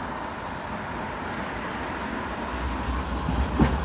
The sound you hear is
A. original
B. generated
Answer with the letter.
A